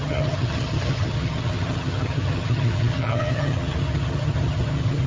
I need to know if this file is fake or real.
fake